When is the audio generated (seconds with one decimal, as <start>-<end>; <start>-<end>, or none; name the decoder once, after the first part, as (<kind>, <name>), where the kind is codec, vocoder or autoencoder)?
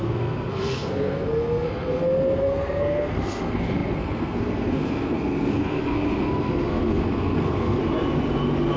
0.0-7.8 (codec, SNAC)